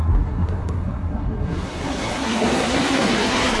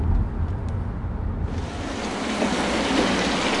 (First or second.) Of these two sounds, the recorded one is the second